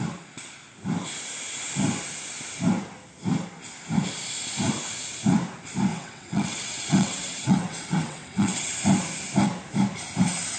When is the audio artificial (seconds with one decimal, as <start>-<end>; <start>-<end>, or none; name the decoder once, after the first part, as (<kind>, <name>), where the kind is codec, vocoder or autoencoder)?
5.9-8.7 (vocoder, WaveNeXt)